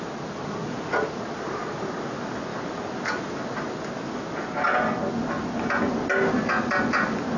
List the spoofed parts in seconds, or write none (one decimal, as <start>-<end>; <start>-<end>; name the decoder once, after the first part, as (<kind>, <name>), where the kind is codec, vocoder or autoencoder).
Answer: none